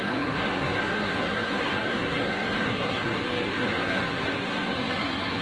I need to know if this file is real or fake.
fake